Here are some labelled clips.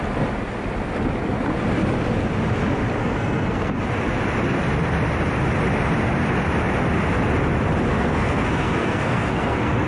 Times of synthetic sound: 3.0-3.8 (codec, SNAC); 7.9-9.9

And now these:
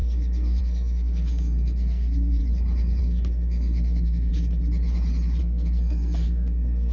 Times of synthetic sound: 0.0-2.4 (codec, SNAC); 3.0-4.3; 5.4-6.9

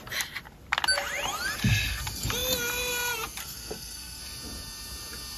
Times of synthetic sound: 3.4-4.2 (codec, SNAC)

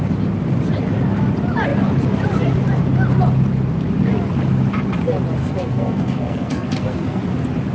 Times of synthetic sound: 5.4-7.2 (codec, SNAC)

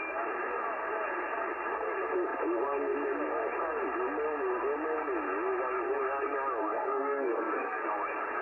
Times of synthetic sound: 6.7-7.9 (codec, SNAC)

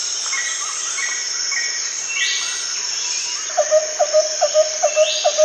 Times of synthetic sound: none

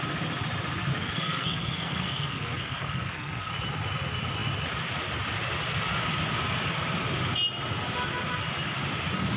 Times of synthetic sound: 0.9-3.5 (codec, SNAC)